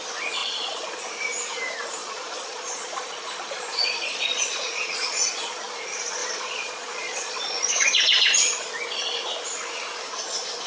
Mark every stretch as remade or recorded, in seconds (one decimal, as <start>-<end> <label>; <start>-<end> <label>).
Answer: 0.0-0.4 recorded; 0.4-1.0 remade; 1.0-2.0 recorded; 2.0-5.6 remade; 5.6-6.2 recorded; 6.2-8.7 remade; 8.7-10.7 recorded